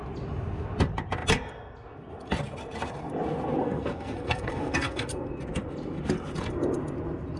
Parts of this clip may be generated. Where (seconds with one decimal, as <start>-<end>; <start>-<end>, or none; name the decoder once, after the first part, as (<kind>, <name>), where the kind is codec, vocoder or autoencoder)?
3.6-5.1 (codec, SNAC)